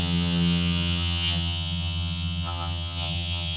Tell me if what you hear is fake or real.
fake